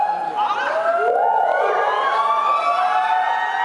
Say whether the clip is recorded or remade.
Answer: recorded